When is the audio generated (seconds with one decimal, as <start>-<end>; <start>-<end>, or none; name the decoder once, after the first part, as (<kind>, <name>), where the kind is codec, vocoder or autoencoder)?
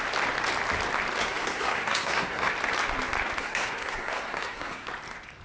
1.2-2.5 (codec, SNAC); 3.4-4.9